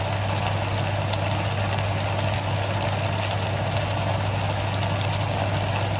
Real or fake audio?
real